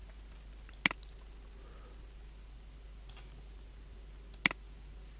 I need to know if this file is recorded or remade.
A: recorded